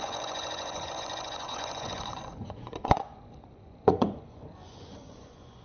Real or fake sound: fake